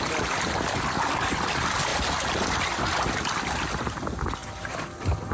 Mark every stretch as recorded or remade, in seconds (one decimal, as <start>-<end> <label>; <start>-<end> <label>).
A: 0.0-5.3 recorded